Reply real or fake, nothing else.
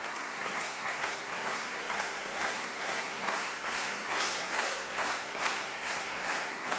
fake